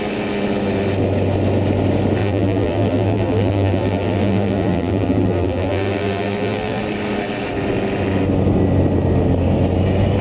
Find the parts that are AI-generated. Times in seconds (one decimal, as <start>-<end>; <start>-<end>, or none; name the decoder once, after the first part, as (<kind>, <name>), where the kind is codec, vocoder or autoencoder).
2.2-6.8 (vocoder, BigVGAN v2)